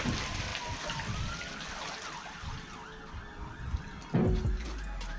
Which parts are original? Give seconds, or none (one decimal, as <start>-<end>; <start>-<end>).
0.0-5.2